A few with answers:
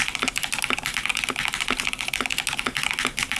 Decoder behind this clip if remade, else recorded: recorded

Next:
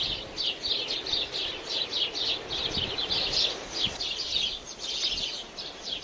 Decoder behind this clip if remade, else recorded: recorded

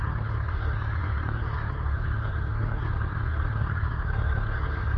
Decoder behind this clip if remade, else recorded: remade, codec, SNAC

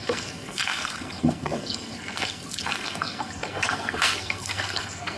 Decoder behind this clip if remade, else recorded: remade, codec, SNAC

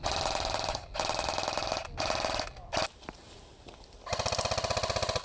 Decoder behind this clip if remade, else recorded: recorded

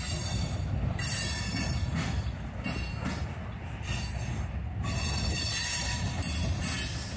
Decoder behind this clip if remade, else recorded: recorded